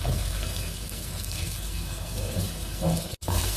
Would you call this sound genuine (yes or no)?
no